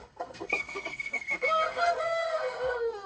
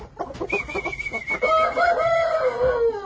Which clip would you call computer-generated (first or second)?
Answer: first